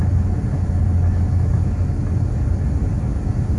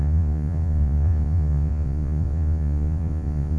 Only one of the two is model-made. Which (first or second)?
second